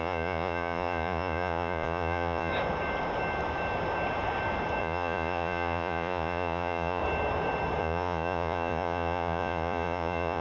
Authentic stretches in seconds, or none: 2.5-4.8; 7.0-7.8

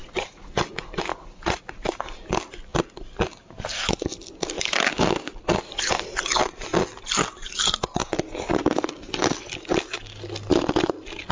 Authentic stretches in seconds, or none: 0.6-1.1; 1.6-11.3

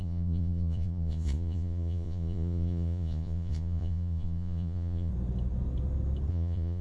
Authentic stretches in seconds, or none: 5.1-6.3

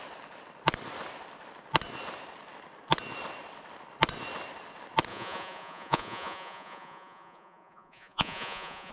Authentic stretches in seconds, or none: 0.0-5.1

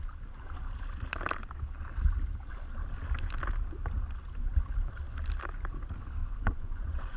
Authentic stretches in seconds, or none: 0.0-6.2